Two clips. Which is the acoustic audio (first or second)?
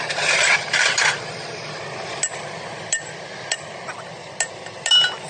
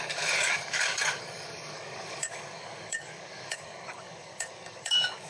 first